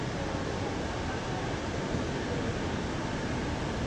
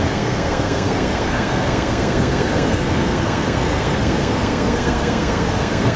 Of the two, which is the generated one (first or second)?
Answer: second